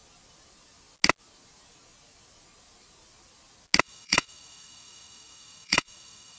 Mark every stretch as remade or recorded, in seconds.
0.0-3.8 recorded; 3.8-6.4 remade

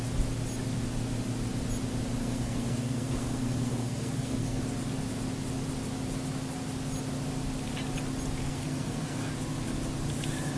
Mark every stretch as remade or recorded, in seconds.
0.0-2.2 recorded; 2.2-4.6 remade; 4.6-8.4 recorded; 8.4-9.3 remade; 9.3-10.6 recorded